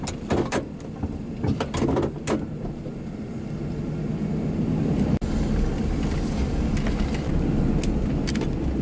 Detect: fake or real real